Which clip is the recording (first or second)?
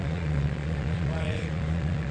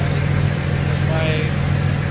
second